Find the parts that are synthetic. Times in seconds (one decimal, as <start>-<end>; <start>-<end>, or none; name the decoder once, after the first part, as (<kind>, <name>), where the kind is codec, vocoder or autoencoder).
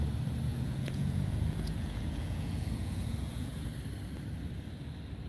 0.5-3.7 (vocoder, Vocos)